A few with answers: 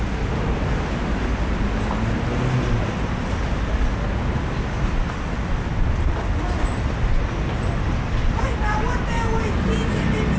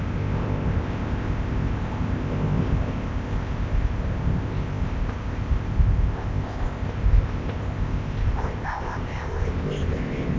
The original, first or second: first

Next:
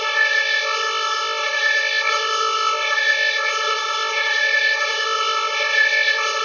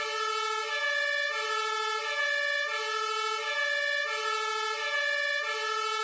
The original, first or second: second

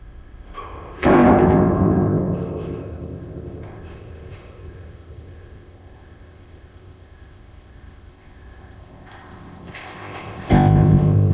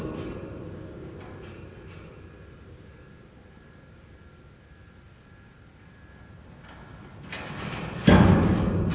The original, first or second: second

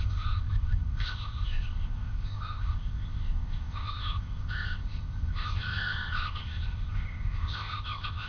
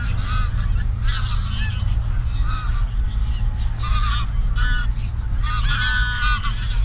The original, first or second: second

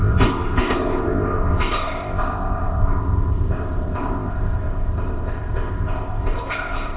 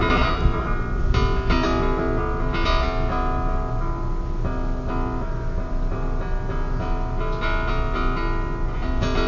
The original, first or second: second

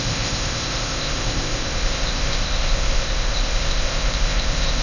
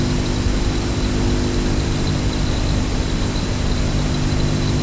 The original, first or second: second